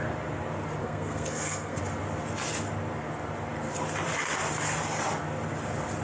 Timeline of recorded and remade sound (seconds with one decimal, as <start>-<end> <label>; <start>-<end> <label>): 0.0-0.8 recorded; 0.8-1.8 remade; 1.8-6.0 recorded